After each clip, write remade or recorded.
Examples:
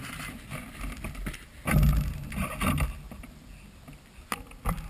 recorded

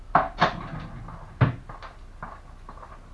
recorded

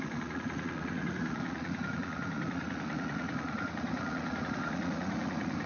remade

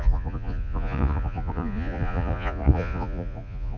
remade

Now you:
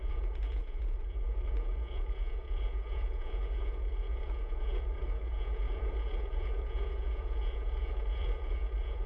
remade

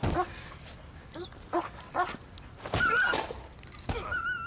recorded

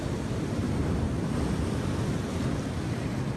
recorded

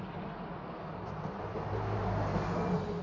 recorded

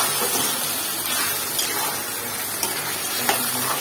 recorded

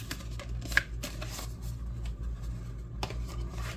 recorded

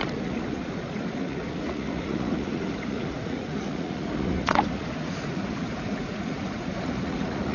remade